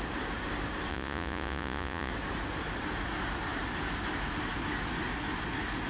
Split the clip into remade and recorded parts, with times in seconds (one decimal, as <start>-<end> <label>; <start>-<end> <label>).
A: 0.0-0.9 recorded; 0.9-2.1 remade; 2.1-5.9 recorded